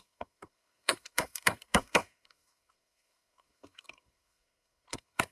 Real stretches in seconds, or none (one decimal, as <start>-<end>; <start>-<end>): none